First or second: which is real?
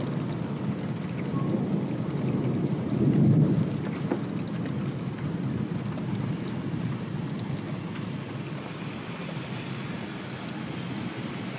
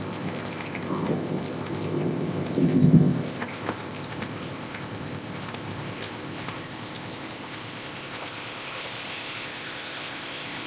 first